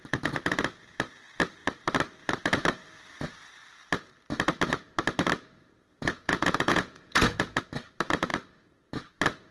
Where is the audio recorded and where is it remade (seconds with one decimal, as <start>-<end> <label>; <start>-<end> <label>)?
0.0-5.9 recorded; 5.9-7.6 remade; 7.6-9.5 recorded